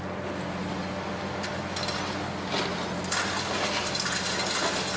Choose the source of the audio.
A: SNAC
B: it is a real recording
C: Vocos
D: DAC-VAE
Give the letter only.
B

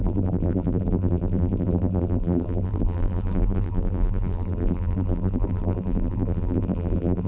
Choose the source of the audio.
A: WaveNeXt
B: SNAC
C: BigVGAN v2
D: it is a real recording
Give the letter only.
C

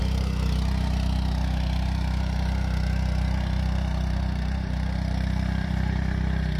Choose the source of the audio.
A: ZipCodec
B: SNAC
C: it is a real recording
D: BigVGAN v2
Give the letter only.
D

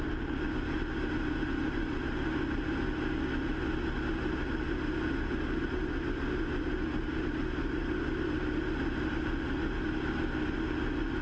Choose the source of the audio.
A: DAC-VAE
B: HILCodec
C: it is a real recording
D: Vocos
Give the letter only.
C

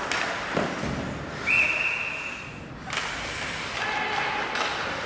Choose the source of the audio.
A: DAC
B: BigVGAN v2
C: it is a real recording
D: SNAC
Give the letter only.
C